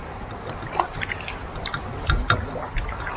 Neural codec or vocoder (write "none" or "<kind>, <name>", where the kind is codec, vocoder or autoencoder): none